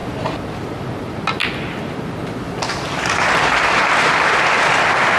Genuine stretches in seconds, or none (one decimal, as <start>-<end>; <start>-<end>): 0.0-5.2